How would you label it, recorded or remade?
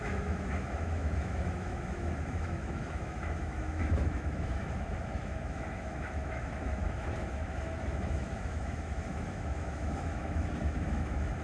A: remade